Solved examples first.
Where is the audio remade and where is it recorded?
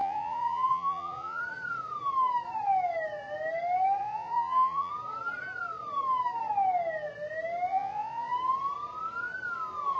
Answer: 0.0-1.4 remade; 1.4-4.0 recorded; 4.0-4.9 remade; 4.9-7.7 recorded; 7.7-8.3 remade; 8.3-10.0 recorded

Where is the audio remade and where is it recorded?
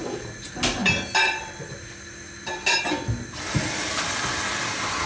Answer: 0.0-5.1 recorded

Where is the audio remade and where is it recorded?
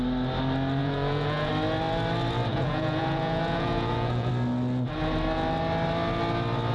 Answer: 0.0-0.8 recorded; 0.8-1.5 remade; 1.5-2.5 recorded; 2.5-4.3 remade; 4.3-6.7 recorded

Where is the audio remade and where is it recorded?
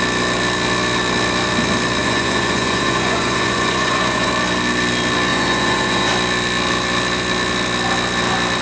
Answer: 0.0-2.0 recorded; 2.0-4.3 remade; 4.3-5.3 recorded; 5.3-6.1 remade; 6.1-8.6 recorded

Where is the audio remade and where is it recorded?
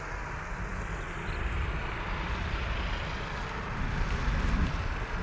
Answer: 0.0-5.2 recorded